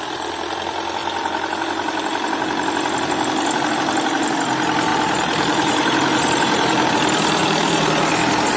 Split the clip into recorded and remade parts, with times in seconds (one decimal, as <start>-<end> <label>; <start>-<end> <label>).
0.0-4.9 recorded; 4.9-6.9 remade; 6.9-7.4 recorded; 7.4-8.1 remade; 8.1-8.6 recorded